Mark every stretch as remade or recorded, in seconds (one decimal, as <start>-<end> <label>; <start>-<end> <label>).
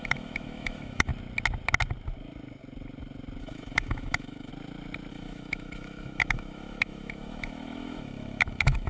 0.0-1.1 remade; 1.1-3.4 recorded; 3.4-4.5 remade; 4.5-5.1 recorded; 5.1-8.9 remade